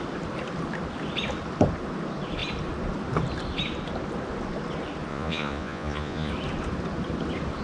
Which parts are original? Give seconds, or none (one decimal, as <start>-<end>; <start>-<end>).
0.0-5.1; 6.3-7.6